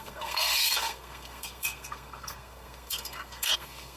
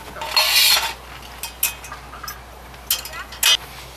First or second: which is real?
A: second